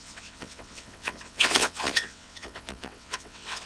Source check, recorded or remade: remade